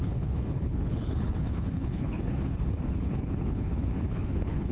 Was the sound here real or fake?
fake